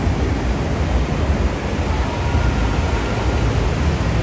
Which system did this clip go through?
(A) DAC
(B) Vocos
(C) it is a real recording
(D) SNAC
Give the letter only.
C